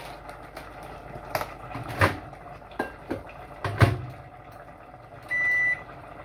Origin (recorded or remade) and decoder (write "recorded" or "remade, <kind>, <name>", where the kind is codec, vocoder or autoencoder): recorded